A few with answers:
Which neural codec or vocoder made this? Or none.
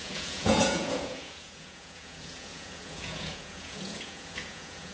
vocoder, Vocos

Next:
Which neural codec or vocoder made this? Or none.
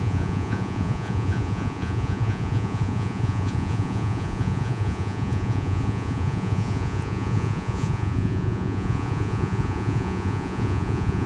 vocoder, Vocos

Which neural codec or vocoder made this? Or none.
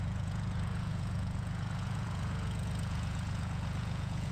vocoder, Vocos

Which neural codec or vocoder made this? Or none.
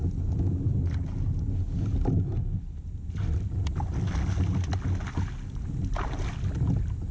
none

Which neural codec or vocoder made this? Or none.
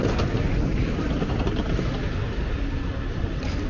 none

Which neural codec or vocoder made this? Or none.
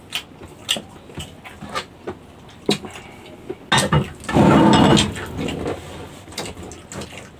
none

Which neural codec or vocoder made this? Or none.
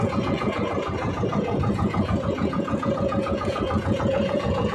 vocoder, Vocos